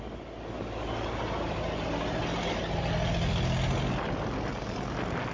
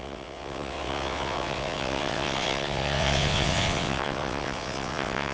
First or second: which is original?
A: first